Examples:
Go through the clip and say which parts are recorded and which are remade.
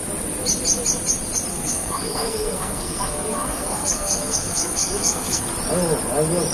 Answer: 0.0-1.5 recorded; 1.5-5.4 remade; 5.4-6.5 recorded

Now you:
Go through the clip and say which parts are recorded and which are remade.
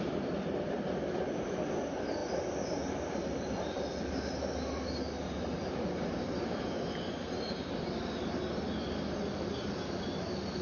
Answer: 0.0-10.6 recorded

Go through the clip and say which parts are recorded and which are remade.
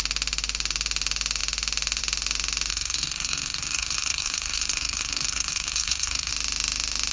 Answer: 0.0-2.7 recorded; 2.7-6.3 remade; 6.3-7.1 recorded